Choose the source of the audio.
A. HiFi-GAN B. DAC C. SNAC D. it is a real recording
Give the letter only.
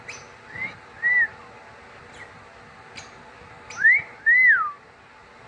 D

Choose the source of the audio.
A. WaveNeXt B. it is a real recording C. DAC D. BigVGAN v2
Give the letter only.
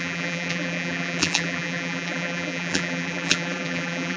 D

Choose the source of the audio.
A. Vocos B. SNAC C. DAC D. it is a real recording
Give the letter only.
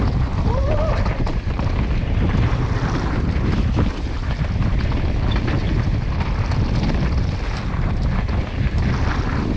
D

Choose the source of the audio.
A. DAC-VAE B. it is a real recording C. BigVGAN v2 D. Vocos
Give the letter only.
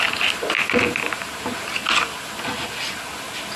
B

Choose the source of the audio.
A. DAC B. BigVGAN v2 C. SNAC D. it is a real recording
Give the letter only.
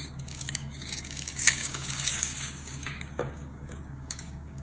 A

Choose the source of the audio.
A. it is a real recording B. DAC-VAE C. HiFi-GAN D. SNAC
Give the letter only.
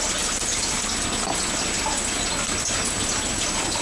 A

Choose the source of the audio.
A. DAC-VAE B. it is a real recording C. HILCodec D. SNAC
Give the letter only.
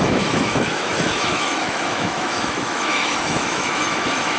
A